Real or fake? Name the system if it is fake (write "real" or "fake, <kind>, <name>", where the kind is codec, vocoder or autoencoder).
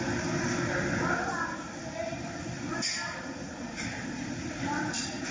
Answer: real